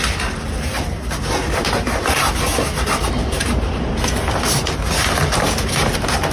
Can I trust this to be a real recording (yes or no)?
yes